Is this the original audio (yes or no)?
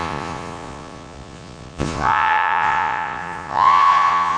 no